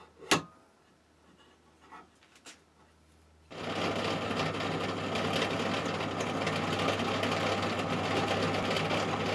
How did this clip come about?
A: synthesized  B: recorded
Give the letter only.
B